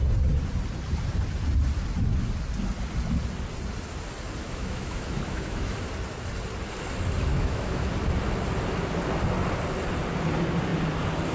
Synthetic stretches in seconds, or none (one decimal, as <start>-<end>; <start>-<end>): 4.4-5.9; 7.3-7.9